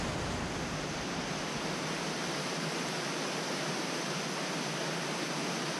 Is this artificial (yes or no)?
no